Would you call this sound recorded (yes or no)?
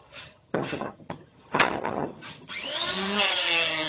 no